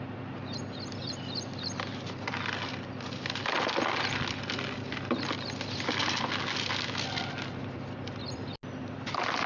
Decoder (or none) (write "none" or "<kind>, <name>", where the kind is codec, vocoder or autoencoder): none